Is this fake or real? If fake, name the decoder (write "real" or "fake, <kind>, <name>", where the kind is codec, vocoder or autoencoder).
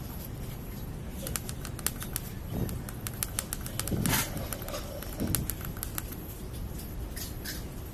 real